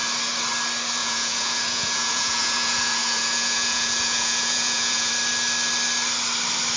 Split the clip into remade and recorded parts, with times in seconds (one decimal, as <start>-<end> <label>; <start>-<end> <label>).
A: 0.0-1.0 recorded; 1.0-5.1 remade; 5.1-6.8 recorded